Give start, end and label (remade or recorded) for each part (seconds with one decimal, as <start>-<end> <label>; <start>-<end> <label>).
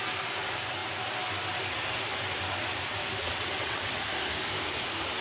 0.0-3.2 recorded; 3.2-3.9 remade; 3.9-5.2 recorded